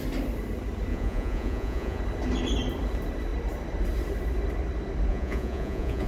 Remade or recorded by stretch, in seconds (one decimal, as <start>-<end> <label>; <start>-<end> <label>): 0.0-0.9 recorded; 0.9-2.0 remade; 2.0-5.1 recorded; 5.1-6.1 remade